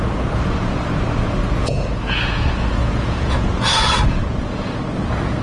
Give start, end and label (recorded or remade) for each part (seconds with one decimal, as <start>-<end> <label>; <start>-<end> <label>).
0.0-1.6 recorded; 1.6-4.8 remade; 4.8-5.4 recorded